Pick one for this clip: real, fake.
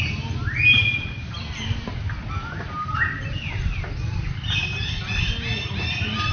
real